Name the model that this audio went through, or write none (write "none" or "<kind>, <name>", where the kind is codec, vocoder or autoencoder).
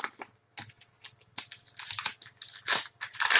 none